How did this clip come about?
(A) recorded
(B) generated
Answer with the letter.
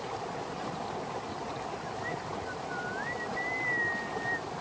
A